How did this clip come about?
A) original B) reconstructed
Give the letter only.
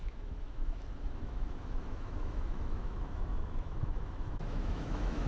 B